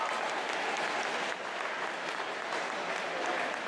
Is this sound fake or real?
real